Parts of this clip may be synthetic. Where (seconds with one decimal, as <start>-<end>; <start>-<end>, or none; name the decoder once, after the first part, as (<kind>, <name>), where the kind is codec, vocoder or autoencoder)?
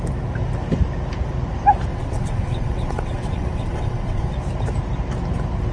1.9-4.3 (vocoder, WaveNeXt)